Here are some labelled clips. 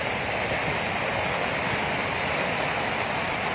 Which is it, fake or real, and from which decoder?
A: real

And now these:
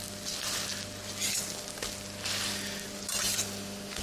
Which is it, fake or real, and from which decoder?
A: real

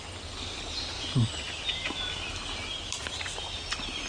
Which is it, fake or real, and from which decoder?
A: real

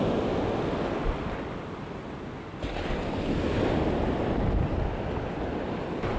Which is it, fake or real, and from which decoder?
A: real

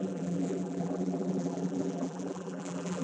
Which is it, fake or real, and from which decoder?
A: fake, vocoder, BigVGAN v2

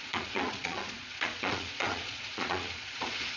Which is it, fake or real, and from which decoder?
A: fake, vocoder, Vocos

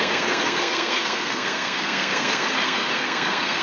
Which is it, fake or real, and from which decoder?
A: fake, codec, SNAC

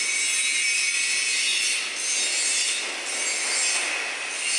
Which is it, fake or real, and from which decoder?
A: real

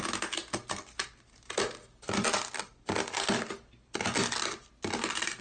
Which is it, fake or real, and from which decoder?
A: real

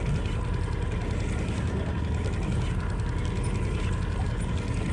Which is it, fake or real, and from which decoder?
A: real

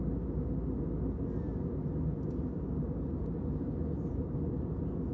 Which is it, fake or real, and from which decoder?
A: real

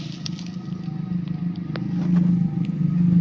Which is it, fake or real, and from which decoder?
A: real